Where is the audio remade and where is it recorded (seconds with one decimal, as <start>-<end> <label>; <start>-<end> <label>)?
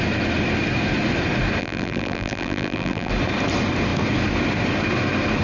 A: 0.0-1.6 recorded; 1.6-3.1 remade; 3.1-5.4 recorded